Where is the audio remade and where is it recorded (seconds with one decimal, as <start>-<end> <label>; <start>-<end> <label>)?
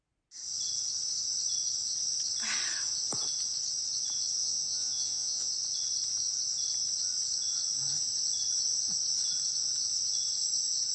0.0-4.4 recorded; 4.4-5.5 remade; 5.5-10.9 recorded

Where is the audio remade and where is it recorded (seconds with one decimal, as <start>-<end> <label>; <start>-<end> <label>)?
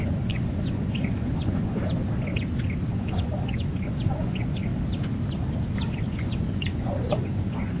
0.0-1.8 remade; 1.8-2.9 recorded; 2.9-4.7 remade; 4.7-5.9 recorded; 5.9-7.8 remade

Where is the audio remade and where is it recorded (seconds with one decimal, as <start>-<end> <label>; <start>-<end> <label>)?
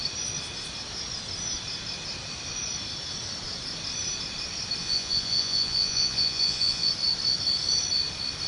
0.0-4.8 recorded; 4.8-6.9 remade; 6.9-8.5 recorded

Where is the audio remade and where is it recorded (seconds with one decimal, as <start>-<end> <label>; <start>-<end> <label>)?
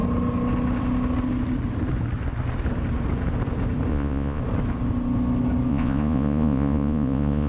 0.0-3.9 recorded; 3.9-4.4 remade; 4.4-5.7 recorded; 5.7-7.5 remade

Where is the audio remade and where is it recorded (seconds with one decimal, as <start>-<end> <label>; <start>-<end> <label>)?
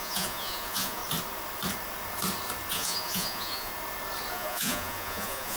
0.0-1.0 remade; 1.0-2.7 recorded; 2.7-3.7 remade; 3.7-4.3 recorded; 4.3-5.6 remade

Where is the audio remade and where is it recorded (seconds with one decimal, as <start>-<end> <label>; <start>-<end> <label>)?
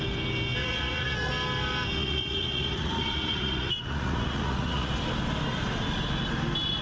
0.0-0.6 recorded; 0.6-1.3 remade; 1.3-2.0 recorded; 2.0-4.9 remade; 4.9-6.8 recorded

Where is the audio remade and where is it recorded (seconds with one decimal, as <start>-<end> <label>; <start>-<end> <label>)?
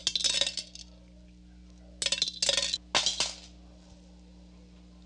0.0-5.1 recorded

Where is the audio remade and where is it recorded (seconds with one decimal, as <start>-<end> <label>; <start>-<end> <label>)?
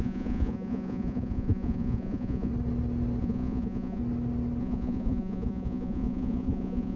0.0-2.5 remade; 2.5-3.2 recorded; 3.2-4.0 remade; 4.0-4.6 recorded; 4.6-7.0 remade